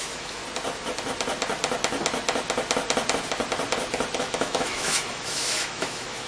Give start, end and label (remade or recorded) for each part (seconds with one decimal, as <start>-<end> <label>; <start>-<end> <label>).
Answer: 0.0-0.4 remade; 0.4-4.2 recorded; 4.2-6.3 remade